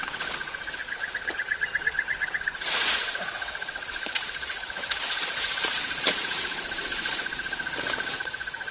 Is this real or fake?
fake